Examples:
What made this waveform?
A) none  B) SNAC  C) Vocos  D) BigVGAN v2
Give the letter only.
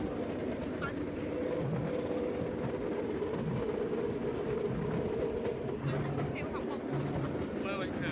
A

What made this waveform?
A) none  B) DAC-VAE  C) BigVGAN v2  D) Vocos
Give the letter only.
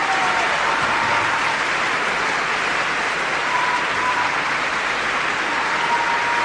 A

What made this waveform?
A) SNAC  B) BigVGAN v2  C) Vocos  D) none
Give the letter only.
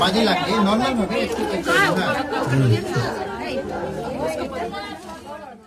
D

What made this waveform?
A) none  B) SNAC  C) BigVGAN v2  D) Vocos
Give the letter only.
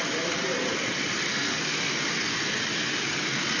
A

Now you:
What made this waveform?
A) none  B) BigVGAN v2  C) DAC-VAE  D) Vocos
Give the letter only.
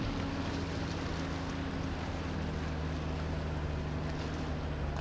A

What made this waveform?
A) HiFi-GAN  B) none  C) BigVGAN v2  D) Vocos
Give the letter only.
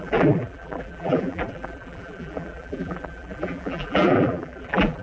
C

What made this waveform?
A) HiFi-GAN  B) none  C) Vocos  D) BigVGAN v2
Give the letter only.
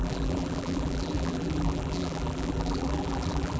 D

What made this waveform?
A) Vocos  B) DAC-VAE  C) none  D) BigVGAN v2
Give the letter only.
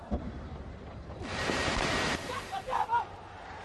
D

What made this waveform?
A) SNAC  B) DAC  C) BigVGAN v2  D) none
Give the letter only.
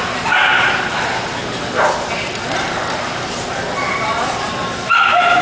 C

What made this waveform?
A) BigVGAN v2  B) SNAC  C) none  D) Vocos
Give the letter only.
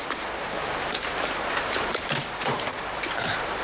A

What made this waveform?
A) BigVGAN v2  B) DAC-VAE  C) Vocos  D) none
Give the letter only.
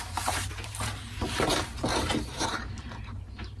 A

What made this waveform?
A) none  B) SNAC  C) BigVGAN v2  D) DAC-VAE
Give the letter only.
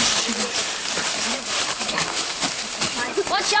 C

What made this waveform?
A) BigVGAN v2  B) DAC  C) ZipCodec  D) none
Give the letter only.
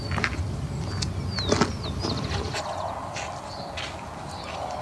D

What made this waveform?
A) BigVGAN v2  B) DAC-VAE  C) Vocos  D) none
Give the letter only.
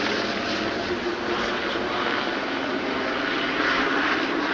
D